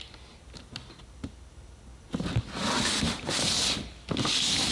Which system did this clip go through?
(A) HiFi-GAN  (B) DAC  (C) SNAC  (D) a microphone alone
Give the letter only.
D